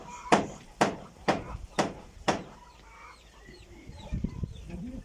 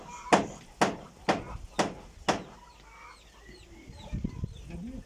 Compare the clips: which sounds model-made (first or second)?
first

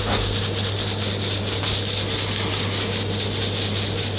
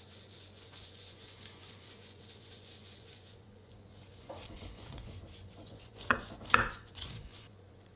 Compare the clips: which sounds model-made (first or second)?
second